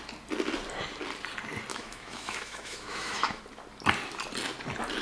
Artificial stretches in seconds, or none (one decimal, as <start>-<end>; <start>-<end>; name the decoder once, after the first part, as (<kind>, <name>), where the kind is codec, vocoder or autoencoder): 1.7-3.4 (autoencoder, DAC-VAE)